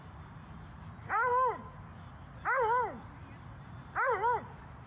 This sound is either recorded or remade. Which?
recorded